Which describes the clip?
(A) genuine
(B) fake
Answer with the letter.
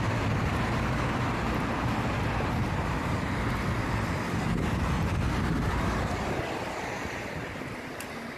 A